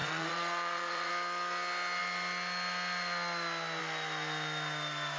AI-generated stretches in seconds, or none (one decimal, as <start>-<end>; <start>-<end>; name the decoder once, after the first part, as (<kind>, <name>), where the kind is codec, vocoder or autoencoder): 0.0-1.1 (vocoder, WaveNeXt)